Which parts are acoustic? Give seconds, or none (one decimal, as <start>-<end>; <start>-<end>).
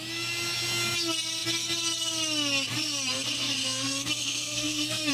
0.0-3.6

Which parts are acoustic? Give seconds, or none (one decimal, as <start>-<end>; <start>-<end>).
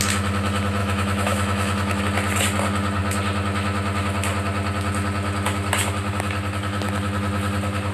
0.0-0.8; 2.0-7.9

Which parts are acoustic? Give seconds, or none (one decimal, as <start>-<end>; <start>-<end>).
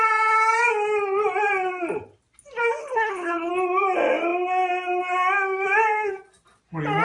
0.0-2.8; 3.5-7.0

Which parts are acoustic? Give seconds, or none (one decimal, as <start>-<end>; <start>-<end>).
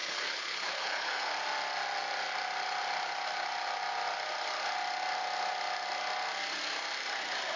1.3-7.6